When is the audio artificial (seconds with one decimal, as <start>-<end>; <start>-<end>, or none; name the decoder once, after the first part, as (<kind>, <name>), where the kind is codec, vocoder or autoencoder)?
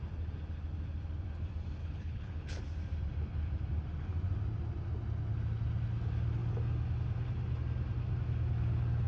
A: 1.8-2.6 (codec, HILCodec)